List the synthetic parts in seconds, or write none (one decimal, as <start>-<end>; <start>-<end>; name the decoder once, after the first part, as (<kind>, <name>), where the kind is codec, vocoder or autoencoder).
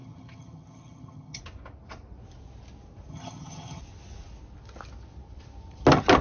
0.0-1.4 (vocoder, HiFi-GAN); 3.1-3.8